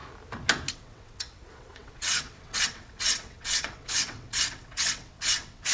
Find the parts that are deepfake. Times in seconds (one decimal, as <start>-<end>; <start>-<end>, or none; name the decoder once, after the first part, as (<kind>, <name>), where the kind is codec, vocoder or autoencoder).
0.7-5.7 (vocoder, WaveNeXt)